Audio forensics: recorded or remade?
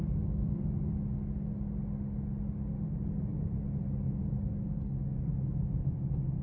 recorded